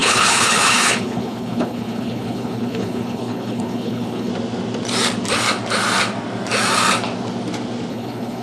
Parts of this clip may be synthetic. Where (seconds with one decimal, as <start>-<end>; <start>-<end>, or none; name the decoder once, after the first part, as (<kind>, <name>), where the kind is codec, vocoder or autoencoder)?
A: 0.0-4.3 (codec, HILCodec); 7.9-8.4